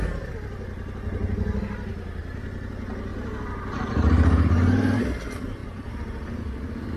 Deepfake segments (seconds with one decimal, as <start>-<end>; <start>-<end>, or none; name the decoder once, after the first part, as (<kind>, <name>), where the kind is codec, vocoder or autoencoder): 1.9-2.7 (vocoder, BigVGAN v2); 3.1-5.0; 5.6-6.3